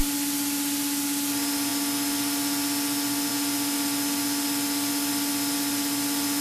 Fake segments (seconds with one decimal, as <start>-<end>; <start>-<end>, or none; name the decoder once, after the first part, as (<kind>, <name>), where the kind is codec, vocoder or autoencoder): none